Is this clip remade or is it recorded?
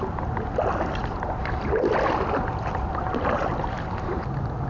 recorded